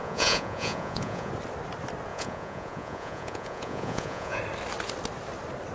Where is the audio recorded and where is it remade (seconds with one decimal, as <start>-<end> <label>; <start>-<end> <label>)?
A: 0.0-1.3 remade; 1.3-2.1 recorded; 2.1-4.4 remade; 4.4-5.7 recorded